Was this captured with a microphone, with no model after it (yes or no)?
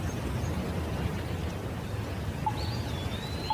yes